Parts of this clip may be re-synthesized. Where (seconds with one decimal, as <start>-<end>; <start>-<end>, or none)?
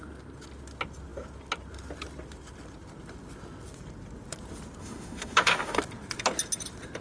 4.8-5.8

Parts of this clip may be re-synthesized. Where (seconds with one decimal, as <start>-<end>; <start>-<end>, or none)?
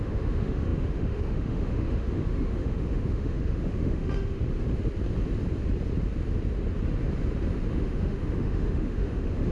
0.0-4.4; 7.7-9.5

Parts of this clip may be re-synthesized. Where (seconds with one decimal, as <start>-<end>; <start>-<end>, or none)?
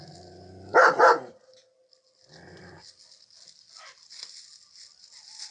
none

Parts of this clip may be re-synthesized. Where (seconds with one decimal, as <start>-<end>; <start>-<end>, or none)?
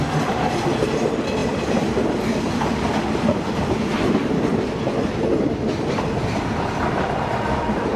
none